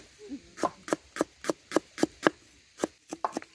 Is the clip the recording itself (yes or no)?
yes